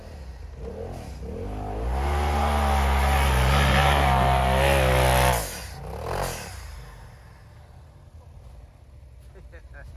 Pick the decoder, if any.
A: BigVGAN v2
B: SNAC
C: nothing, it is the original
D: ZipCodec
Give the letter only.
C